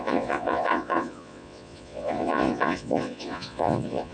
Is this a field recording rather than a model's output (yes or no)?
no